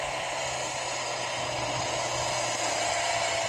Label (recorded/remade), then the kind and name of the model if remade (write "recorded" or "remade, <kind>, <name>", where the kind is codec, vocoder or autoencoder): recorded